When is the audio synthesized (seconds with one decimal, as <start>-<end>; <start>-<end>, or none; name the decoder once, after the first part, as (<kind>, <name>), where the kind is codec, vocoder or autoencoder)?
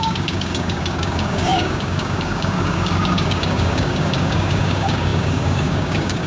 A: 0.0-6.3 (codec, DAC)